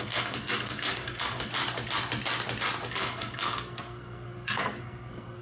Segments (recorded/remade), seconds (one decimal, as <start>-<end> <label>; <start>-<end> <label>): 0.0-1.5 remade; 1.5-2.9 recorded; 2.9-5.4 remade